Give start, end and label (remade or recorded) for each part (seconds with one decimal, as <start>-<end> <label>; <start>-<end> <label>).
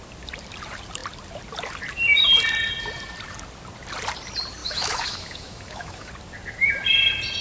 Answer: 0.0-4.6 recorded; 4.6-6.1 remade; 6.1-7.4 recorded